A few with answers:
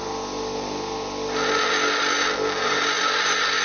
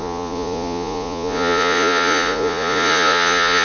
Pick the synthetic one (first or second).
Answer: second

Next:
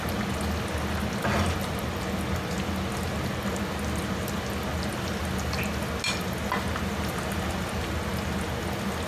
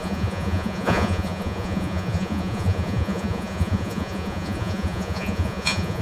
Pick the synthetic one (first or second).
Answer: second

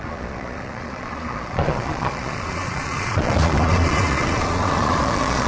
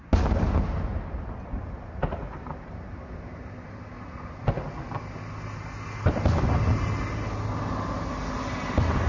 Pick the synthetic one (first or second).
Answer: first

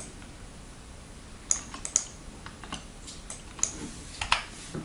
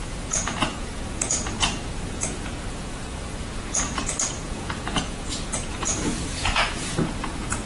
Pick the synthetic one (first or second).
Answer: second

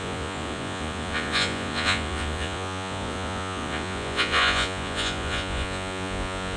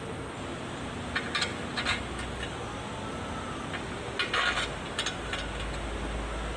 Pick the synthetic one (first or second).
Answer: first